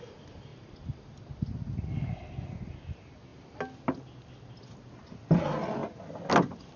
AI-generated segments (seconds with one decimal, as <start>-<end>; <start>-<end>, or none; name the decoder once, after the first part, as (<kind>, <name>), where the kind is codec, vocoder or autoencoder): none